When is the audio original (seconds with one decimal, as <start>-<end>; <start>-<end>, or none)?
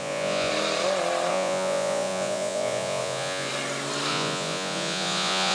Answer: 0.5-1.3; 3.5-4.1